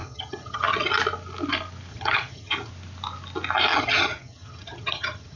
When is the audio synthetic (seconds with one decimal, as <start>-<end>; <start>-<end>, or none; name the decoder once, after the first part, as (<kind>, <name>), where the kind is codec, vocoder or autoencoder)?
0.0-0.9 (vocoder, HiFi-GAN); 1.9-2.7; 3.7-5.4